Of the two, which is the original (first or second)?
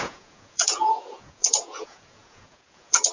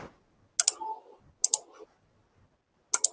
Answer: second